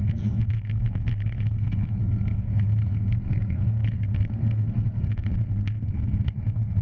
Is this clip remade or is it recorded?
remade